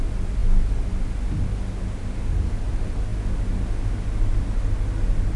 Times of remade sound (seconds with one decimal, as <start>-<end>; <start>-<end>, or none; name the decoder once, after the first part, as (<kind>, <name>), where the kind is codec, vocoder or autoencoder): none